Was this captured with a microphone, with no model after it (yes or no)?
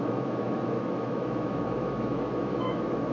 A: no